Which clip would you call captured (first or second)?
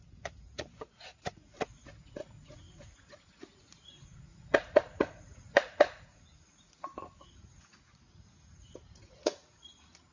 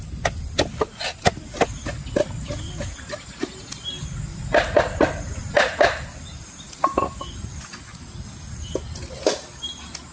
second